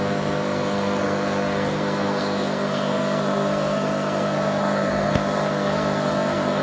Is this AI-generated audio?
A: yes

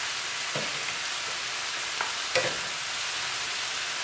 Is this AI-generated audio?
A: no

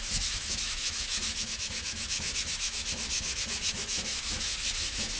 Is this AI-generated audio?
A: yes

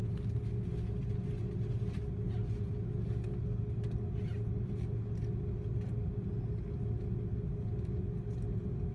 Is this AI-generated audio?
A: no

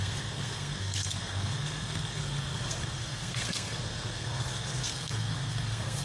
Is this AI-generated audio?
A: yes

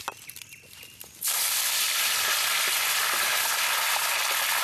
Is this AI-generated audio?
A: no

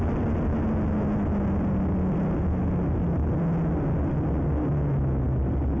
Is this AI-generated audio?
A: no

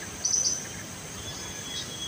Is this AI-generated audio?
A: no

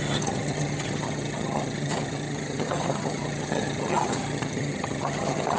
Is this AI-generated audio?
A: yes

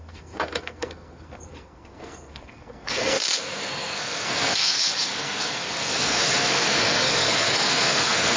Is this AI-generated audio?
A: yes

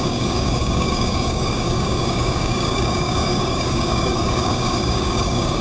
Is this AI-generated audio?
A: yes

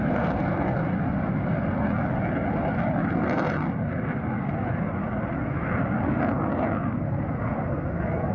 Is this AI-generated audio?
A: no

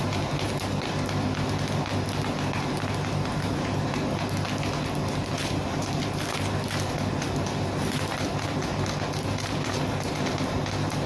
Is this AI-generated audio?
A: no